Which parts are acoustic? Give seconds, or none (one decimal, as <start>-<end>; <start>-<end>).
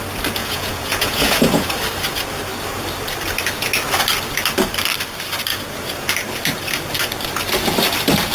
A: 0.0-0.4; 1.7-5.5; 6.1-8.3